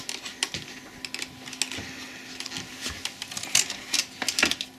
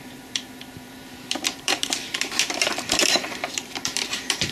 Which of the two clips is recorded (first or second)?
first